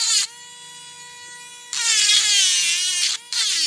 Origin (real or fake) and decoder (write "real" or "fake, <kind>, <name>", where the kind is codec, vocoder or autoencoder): real